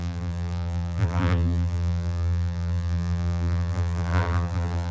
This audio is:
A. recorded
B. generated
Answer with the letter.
B